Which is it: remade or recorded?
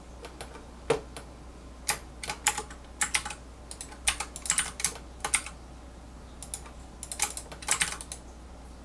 recorded